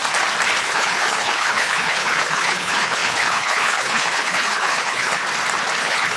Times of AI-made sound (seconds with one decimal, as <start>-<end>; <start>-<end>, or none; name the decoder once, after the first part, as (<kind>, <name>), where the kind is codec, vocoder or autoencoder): 0.6-5.2 (codec, HILCodec); 5.8-6.2